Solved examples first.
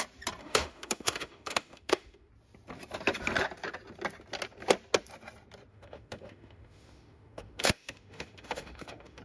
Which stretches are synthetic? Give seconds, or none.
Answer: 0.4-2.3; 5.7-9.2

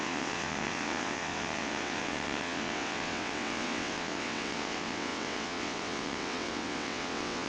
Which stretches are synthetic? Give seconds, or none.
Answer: 0.0-7.5